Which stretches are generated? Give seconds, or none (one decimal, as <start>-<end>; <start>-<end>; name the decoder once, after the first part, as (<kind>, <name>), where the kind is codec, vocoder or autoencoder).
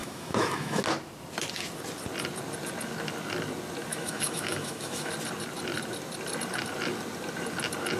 0.0-0.8 (autoencoder, DAC-VAE); 3.9-5.1